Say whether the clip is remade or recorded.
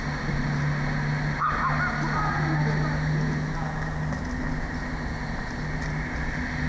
recorded